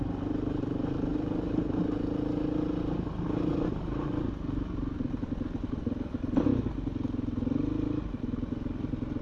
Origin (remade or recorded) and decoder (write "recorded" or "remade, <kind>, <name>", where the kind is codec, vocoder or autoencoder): recorded